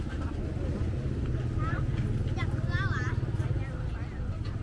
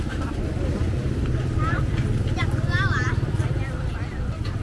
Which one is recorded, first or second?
first